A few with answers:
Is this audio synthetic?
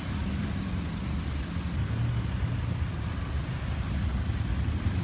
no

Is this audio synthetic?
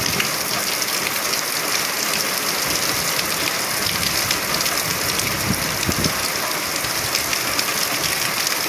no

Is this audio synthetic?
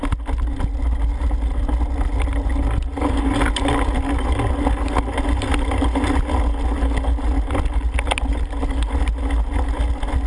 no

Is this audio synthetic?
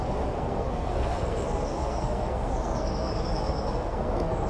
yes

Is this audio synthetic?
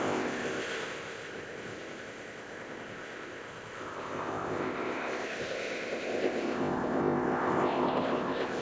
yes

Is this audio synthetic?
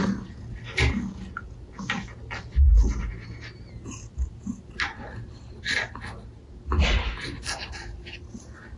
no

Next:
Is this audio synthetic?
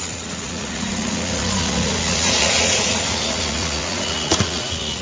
yes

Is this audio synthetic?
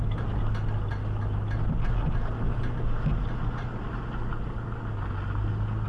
no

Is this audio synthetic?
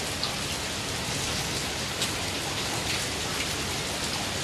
no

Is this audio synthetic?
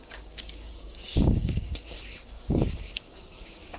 yes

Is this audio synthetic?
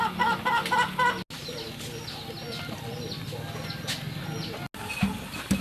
no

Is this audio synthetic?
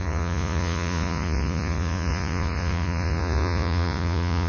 yes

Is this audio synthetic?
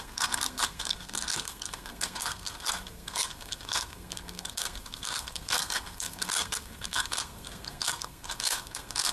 yes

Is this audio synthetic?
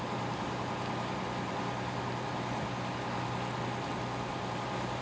no